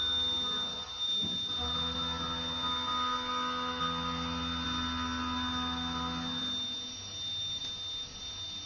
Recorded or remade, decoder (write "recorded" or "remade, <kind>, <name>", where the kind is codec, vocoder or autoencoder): recorded